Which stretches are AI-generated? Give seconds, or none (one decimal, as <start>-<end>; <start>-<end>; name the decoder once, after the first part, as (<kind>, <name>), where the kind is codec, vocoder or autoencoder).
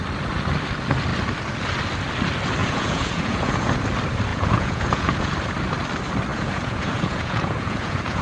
2.6-3.8 (vocoder, Vocos); 4.3-5.3; 6.3-8.2